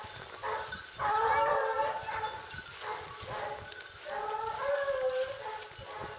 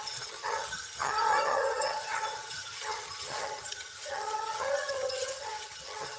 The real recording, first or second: first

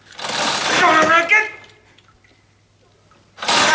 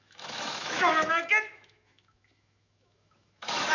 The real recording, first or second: first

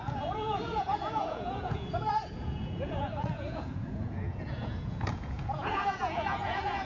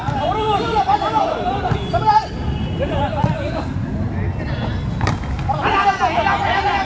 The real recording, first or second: second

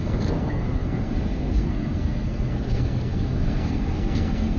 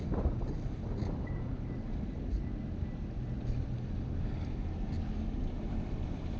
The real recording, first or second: second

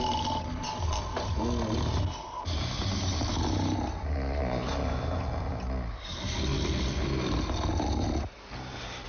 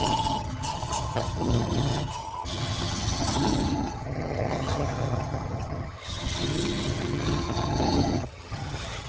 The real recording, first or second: first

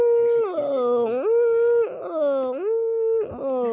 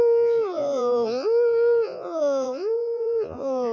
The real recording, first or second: first